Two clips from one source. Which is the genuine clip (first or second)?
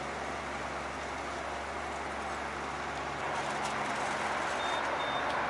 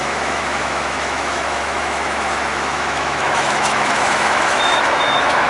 first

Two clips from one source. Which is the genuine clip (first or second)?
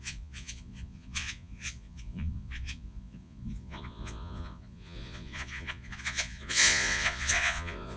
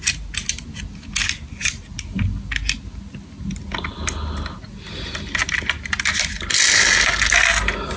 second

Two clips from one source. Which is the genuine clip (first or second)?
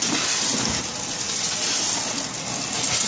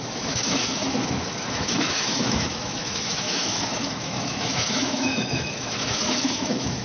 first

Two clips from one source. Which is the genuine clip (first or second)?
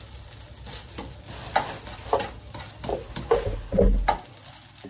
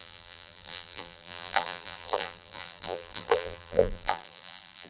first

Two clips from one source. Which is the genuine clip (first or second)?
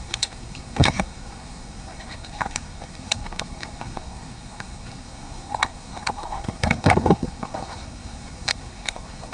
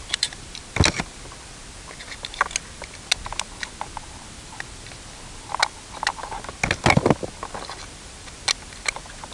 second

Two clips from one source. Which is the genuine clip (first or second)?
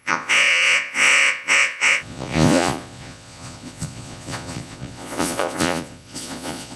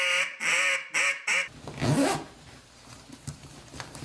second